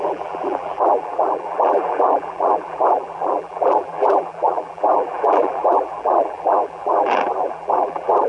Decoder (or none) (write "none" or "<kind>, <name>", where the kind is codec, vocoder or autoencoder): vocoder, BigVGAN v2